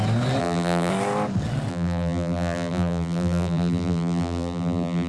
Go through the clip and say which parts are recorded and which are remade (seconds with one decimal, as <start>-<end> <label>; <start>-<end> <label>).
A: 0.0-0.4 recorded; 0.4-0.9 remade; 0.9-1.7 recorded; 1.7-5.1 remade